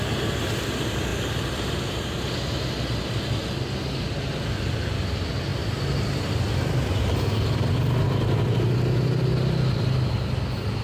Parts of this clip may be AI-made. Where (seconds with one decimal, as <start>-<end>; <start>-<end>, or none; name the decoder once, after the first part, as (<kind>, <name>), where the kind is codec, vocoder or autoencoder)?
none